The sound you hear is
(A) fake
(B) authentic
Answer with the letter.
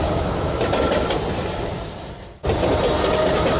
B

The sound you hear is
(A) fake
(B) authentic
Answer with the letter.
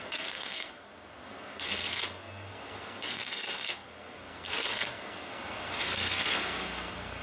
A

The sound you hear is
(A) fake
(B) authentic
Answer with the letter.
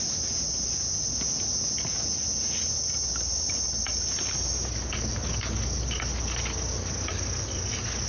B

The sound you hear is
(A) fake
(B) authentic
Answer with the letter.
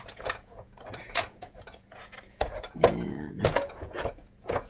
A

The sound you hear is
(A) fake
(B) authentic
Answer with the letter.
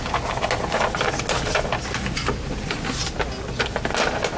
B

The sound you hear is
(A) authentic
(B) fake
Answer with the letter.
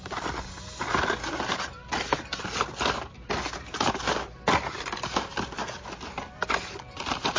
A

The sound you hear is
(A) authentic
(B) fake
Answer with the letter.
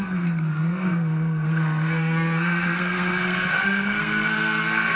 B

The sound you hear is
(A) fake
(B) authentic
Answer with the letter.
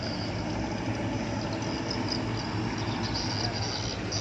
B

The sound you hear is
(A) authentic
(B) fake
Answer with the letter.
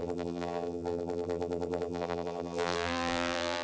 B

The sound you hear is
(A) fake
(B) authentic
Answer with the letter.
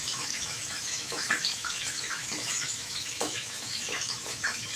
A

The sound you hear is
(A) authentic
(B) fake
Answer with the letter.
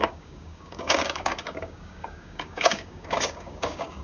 B